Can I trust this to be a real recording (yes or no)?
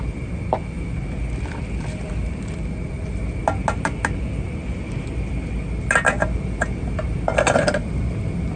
yes